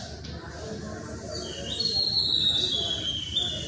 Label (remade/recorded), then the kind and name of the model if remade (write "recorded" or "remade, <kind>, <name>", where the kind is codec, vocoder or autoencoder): recorded